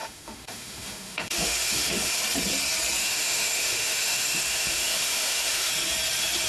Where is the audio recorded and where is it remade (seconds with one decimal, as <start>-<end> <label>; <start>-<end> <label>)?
0.0-2.2 remade; 2.2-3.0 recorded; 3.0-5.7 remade; 5.7-6.5 recorded